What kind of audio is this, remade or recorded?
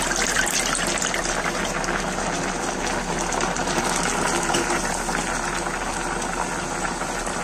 recorded